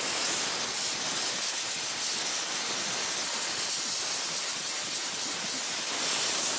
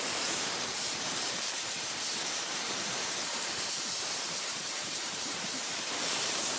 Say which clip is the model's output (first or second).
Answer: second